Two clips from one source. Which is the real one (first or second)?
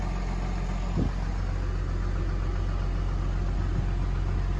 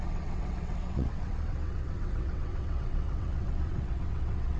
first